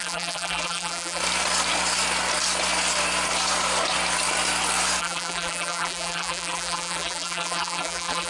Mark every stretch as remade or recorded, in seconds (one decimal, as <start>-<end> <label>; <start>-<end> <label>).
0.0-1.2 remade; 1.2-5.0 recorded; 5.0-8.3 remade